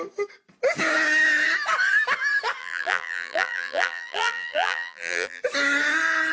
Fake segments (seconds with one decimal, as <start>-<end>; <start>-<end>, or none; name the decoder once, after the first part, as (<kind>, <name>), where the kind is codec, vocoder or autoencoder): 2.6-5.4 (vocoder, BigVGAN v2)